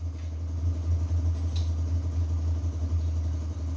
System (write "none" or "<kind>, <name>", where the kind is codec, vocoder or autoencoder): none